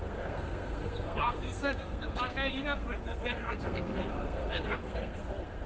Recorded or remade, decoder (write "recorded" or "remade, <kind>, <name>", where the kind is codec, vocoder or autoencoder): remade, codec, SNAC